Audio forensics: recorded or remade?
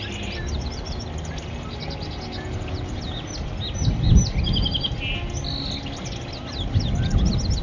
recorded